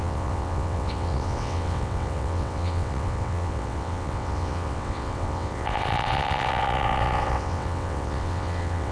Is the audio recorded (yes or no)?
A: no